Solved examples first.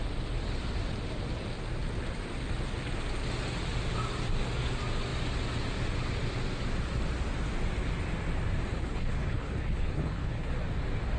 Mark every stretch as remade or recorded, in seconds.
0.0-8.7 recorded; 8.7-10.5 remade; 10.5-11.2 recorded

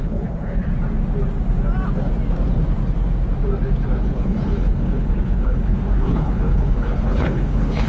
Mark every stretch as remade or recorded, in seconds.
0.0-0.7 remade; 0.7-4.0 recorded; 4.0-7.9 remade